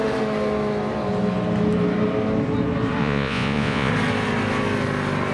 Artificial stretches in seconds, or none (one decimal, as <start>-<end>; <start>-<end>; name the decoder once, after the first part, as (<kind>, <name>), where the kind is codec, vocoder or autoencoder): 3.0-3.9 (vocoder, Vocos)